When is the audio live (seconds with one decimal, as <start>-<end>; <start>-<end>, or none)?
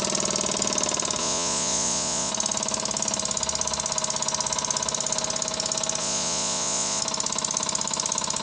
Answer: 0.0-1.2; 2.3-6.0; 7.0-8.4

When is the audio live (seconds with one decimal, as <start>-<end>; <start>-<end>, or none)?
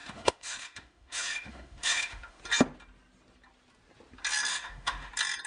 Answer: 2.4-4.5; 5.1-5.5